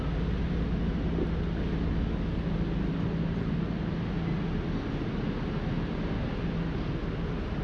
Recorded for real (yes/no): yes